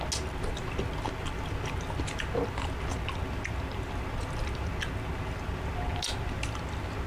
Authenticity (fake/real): real